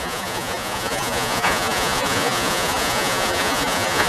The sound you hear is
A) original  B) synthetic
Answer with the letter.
B